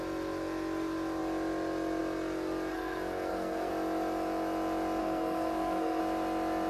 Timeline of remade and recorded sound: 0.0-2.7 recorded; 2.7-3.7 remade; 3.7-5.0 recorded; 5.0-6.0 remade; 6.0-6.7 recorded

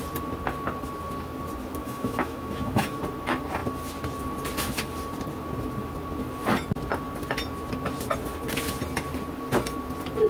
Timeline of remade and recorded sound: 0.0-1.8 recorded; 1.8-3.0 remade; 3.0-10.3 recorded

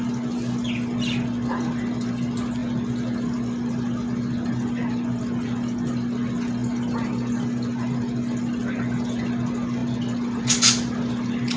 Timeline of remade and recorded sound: 0.0-11.6 recorded

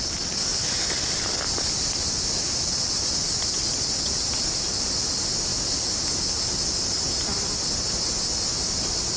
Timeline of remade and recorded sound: 0.0-0.5 recorded; 0.5-2.4 remade; 2.4-8.5 recorded; 8.5-9.2 remade

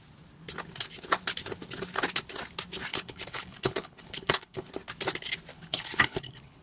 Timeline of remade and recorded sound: 0.0-2.9 recorded; 2.9-4.7 remade; 4.7-5.5 recorded; 5.5-6.6 remade